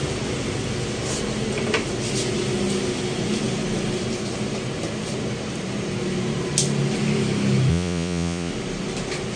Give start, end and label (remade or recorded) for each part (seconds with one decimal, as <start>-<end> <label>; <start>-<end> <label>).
0.0-7.7 recorded; 7.7-8.5 remade; 8.5-9.4 recorded